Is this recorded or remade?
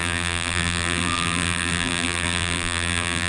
remade